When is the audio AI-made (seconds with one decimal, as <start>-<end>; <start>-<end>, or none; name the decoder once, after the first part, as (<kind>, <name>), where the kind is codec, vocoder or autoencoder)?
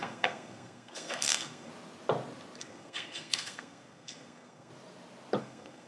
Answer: 0.0-1.7 (codec, SNAC); 2.6-4.7; 5.4-5.9